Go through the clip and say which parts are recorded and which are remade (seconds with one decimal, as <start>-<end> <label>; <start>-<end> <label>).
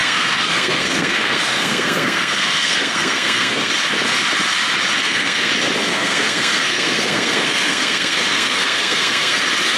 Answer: 0.0-3.7 remade; 3.7-5.0 recorded; 5.0-5.5 remade; 5.5-5.9 recorded; 5.9-9.4 remade; 9.4-9.8 recorded